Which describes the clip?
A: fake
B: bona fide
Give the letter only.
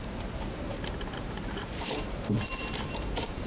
A